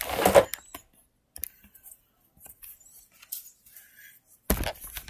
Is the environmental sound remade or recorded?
recorded